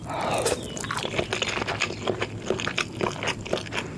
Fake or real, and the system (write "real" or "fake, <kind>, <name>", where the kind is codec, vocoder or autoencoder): real